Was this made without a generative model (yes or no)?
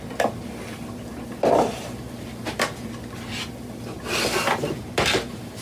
yes